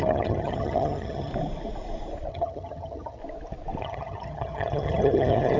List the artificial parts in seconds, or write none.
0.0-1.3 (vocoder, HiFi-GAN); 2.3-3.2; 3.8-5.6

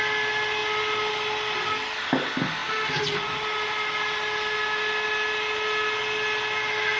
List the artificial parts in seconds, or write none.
none

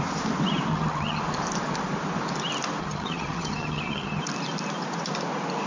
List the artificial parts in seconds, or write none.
0.7-1.2 (vocoder, HiFi-GAN); 2.8-4.2

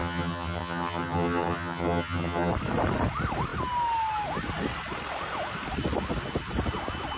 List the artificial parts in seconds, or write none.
0.0-2.5 (vocoder, HiFi-GAN)

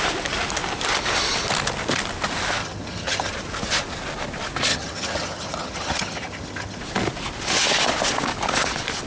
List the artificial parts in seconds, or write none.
2.6-3.3 (vocoder, HiFi-GAN); 4.7-6.8

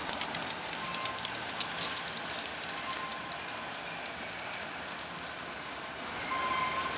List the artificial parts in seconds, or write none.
none